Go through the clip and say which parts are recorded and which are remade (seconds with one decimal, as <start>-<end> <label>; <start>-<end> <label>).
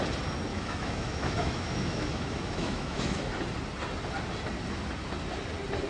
0.0-0.5 recorded; 0.5-3.3 remade; 3.3-5.9 recorded